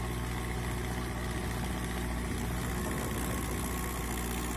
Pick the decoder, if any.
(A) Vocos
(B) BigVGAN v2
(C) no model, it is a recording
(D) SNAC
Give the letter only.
C